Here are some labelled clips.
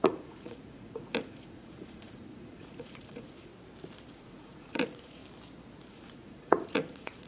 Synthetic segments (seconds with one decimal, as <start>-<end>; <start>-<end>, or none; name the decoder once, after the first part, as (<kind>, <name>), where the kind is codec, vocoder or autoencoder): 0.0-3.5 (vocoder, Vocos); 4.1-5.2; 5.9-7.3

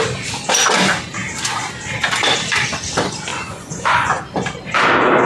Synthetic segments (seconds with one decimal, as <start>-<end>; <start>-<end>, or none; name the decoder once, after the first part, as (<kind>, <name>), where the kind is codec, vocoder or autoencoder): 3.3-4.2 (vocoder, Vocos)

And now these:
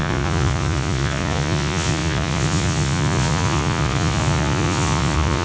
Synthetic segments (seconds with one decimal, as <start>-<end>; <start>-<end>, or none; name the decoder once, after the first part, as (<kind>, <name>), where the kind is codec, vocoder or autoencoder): 0.0-5.4 (vocoder, Vocos)

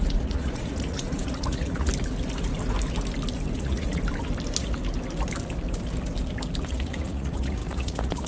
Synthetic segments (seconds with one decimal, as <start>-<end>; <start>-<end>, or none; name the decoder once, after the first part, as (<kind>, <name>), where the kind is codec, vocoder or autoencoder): 0.0-1.9 (vocoder, Vocos); 3.6-4.0; 6.6-8.3